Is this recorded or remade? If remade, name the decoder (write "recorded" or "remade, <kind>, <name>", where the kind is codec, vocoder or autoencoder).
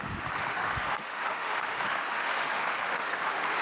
remade, autoencoder, DAC-VAE